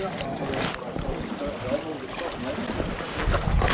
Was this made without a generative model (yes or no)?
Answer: yes